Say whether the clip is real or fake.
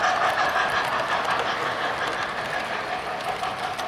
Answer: real